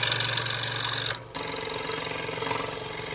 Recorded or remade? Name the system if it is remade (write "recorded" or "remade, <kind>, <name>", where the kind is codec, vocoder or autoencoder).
recorded